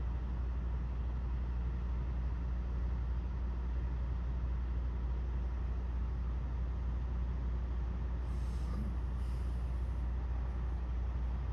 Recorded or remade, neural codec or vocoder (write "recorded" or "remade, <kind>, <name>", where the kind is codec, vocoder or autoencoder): recorded